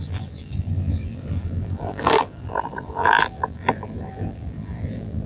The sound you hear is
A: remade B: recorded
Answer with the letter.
A